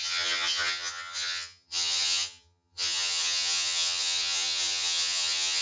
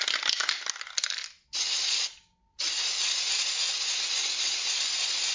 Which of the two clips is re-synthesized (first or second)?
first